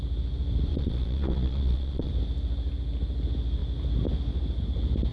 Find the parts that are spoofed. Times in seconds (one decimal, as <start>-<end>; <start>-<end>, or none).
0.7-2.1